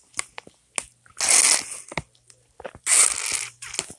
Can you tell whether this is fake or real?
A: real